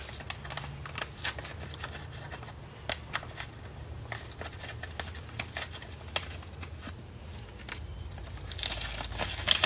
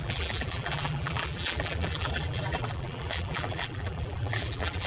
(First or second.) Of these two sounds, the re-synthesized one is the second